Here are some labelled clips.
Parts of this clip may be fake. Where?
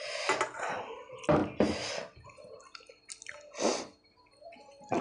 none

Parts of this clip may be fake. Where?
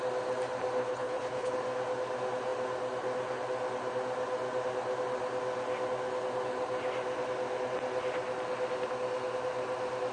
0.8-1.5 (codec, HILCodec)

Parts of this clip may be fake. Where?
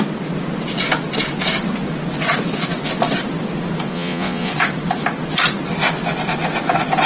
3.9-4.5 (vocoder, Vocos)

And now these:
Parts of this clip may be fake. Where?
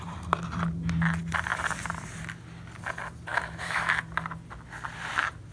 3.3-4.0 (autoencoder, DAC-VAE)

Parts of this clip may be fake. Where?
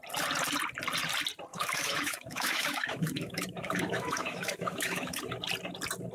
1.5-5.2 (autoencoder, DAC-VAE)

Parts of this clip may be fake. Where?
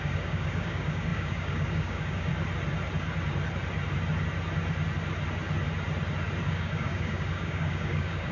0.0-2.3 (codec, DAC); 6.5-8.3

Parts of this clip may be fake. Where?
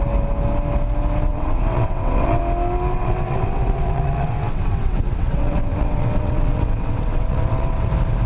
1.3-2.4 (vocoder, WaveNeXt); 2.9-7.9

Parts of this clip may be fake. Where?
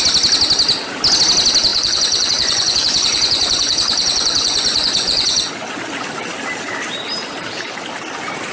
1.7-5.5 (vocoder, Vocos)